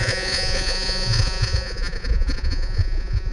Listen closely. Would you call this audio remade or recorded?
remade